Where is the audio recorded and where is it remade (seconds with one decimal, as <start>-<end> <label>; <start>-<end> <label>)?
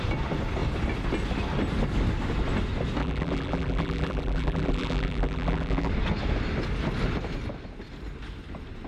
0.0-3.0 recorded; 3.0-5.9 remade; 5.9-8.9 recorded